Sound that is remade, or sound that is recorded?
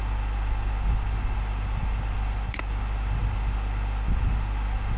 recorded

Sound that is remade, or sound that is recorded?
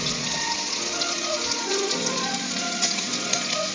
remade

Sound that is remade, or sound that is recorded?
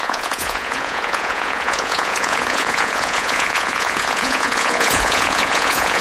remade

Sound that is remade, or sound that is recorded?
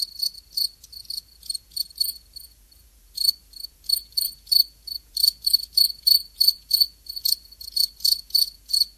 remade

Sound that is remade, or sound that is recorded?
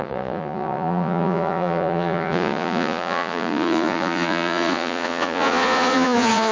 remade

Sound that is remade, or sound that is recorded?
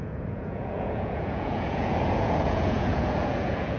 remade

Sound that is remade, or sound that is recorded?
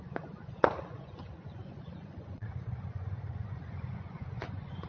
remade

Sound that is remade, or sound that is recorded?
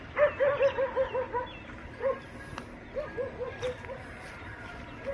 recorded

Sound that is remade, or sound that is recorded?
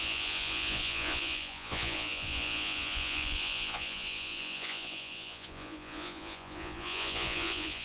remade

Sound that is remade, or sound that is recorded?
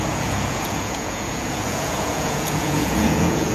remade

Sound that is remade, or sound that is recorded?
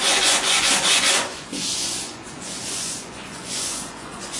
remade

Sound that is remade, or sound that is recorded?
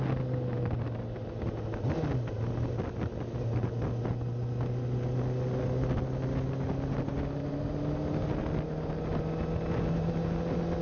recorded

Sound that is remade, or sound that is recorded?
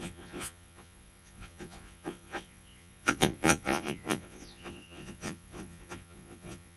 remade